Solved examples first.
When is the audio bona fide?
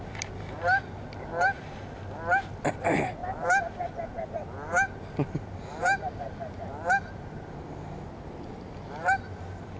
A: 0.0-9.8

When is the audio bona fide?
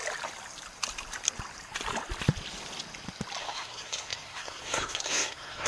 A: 0.0-3.4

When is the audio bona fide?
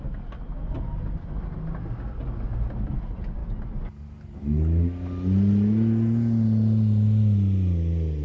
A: 0.0-8.2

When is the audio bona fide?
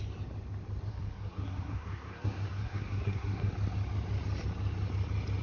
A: 0.0-0.9; 3.5-5.4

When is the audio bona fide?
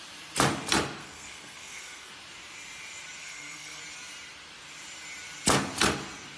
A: 0.0-1.0; 2.1-3.2; 3.8-6.4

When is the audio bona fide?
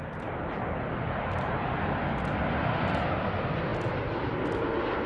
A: 0.0-5.1